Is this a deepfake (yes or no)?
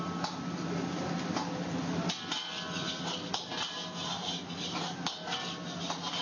no